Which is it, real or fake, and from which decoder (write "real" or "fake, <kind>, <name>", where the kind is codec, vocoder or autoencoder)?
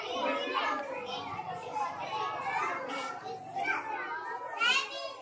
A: real